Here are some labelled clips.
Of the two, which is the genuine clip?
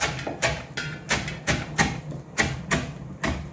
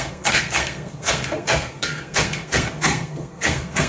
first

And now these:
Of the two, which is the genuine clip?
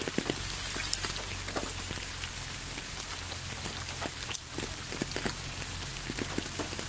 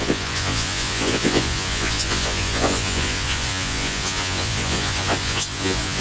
first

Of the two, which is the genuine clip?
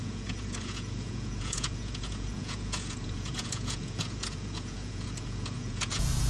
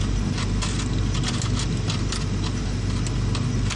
second